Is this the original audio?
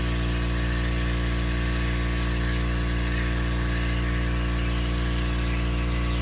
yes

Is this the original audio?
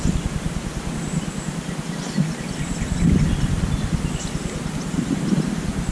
yes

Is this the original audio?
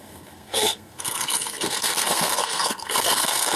no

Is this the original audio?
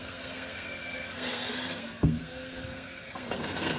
no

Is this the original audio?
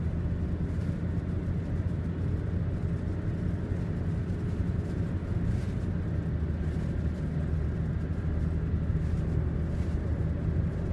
yes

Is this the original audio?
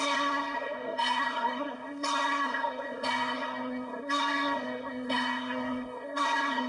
no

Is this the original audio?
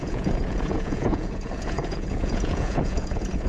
no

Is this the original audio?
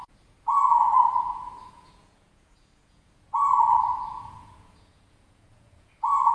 no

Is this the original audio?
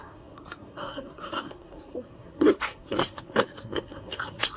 no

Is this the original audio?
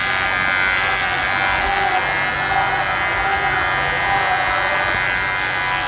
yes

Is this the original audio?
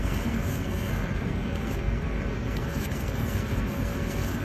no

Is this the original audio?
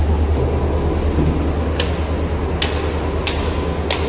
yes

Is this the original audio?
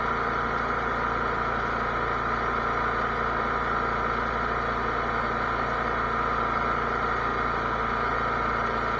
yes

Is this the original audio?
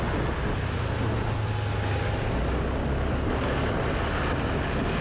yes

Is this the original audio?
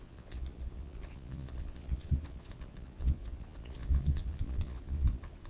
no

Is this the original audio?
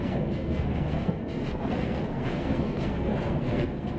no